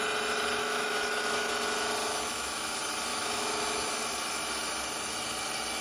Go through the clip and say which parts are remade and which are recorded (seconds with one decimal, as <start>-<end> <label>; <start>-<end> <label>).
0.0-0.6 recorded; 0.6-1.5 remade; 1.5-2.0 recorded; 2.0-2.7 remade; 2.7-3.1 recorded; 3.1-3.9 remade; 3.9-5.8 recorded